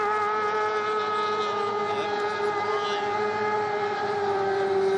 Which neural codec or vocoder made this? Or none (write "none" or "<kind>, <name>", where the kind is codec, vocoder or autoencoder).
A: none